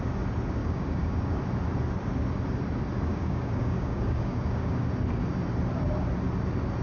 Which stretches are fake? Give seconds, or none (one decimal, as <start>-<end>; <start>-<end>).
0.6-1.4; 3.1-4.8